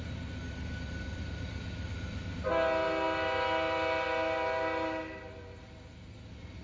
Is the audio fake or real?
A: real